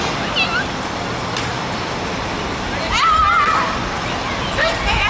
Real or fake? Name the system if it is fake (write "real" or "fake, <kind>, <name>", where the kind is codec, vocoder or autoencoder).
real